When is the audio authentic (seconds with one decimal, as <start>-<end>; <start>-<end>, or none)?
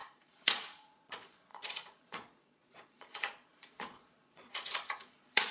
none